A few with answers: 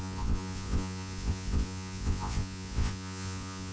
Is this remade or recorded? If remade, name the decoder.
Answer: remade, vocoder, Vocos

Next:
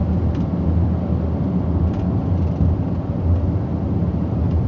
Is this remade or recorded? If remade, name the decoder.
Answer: recorded